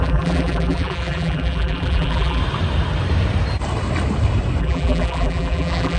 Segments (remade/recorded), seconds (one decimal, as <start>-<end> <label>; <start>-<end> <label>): 0.0-2.4 remade; 2.4-4.6 recorded; 4.6-6.0 remade